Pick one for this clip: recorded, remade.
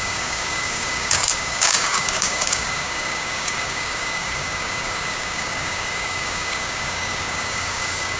remade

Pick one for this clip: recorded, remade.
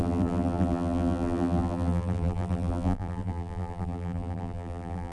remade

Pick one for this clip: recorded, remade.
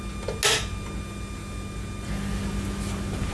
recorded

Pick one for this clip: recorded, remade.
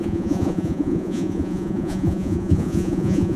remade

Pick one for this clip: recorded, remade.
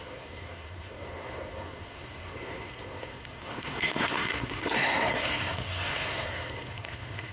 remade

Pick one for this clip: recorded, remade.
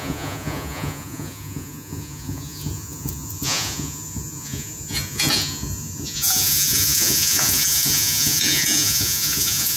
remade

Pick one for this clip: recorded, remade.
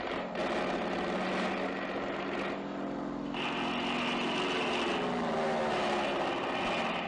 recorded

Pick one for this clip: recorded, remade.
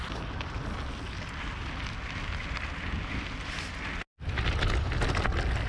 recorded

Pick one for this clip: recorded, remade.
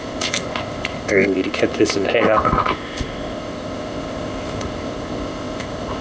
remade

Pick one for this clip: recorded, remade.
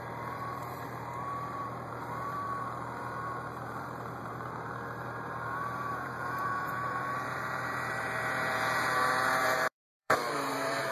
remade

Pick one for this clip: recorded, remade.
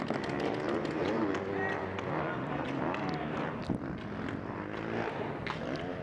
recorded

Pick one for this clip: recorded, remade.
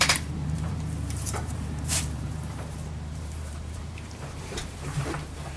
remade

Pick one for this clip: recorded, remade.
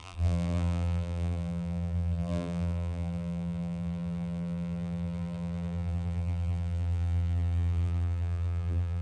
remade